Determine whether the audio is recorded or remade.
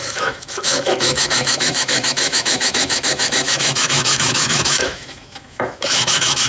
remade